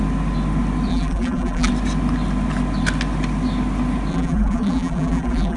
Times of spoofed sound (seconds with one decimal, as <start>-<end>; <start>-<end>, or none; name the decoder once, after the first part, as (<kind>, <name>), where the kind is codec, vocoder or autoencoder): 0.9-1.7 (vocoder, BigVGAN v2); 4.1-5.6